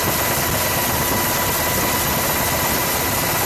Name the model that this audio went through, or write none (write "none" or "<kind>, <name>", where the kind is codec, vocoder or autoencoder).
none